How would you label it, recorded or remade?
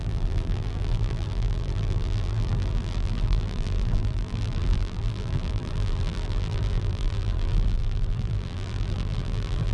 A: remade